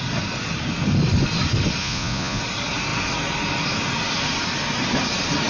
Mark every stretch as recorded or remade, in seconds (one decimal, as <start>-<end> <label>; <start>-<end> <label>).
0.0-1.8 recorded; 1.8-2.4 remade; 2.4-5.5 recorded